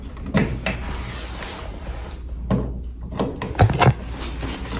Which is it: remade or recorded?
recorded